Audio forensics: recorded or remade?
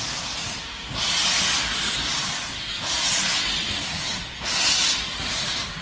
recorded